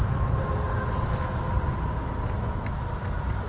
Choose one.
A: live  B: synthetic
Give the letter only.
A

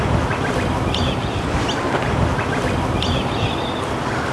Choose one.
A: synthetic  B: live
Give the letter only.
B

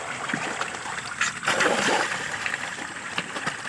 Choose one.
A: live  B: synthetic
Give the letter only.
A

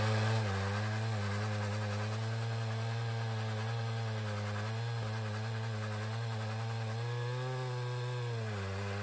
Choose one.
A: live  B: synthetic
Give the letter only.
A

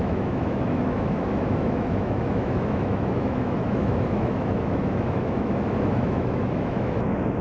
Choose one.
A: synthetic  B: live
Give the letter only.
A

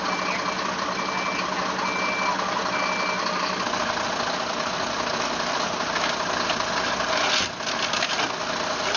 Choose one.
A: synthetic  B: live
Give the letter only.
B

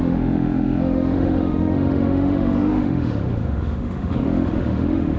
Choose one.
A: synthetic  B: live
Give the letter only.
A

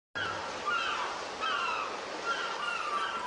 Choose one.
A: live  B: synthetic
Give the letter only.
A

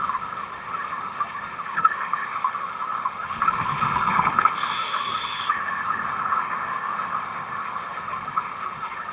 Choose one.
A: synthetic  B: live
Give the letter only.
A